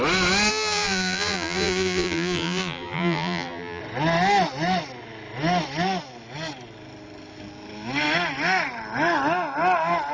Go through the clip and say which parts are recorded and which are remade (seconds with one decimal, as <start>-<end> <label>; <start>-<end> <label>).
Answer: 0.0-0.5 recorded; 0.5-3.8 remade; 3.8-10.1 recorded